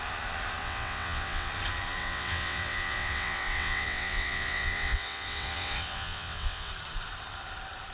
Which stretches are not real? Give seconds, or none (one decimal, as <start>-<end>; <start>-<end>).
0.6-1.5; 2.0-6.7